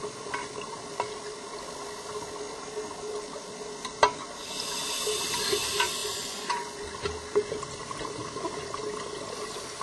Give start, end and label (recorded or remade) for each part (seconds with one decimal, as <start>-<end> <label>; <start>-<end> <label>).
0.0-6.0 recorded; 6.0-6.6 remade; 6.6-9.8 recorded